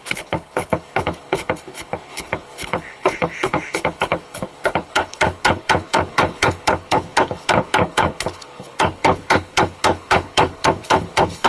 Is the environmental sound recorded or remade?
remade